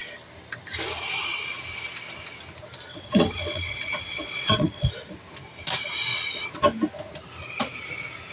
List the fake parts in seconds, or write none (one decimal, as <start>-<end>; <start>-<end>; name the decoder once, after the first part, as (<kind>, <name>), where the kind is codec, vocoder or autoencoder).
2.9-4.9 (vocoder, WaveNeXt)